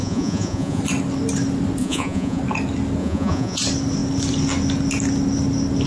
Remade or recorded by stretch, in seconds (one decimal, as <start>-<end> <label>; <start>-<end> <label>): 0.0-0.8 remade; 0.8-1.8 recorded; 1.8-2.4 remade; 2.4-3.0 recorded; 3.0-3.6 remade; 3.6-5.9 recorded